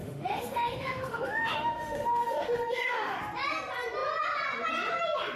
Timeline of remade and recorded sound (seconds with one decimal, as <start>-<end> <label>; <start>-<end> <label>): 0.0-3.2 remade; 3.2-5.4 recorded